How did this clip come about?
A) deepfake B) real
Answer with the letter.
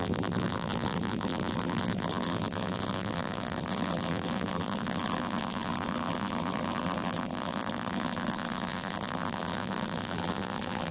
A